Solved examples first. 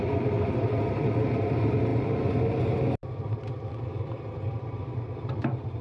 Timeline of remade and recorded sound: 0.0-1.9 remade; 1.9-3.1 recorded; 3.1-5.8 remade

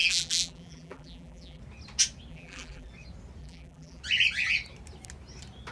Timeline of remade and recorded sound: 0.0-1.6 remade; 1.6-2.3 recorded; 2.3-2.9 remade; 2.9-3.4 recorded; 3.4-4.0 remade; 4.0-5.7 recorded

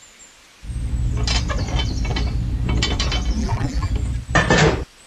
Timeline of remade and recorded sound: 0.0-3.4 recorded; 3.4-3.9 remade; 3.9-5.1 recorded